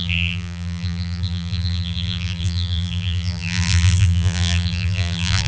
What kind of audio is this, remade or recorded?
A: remade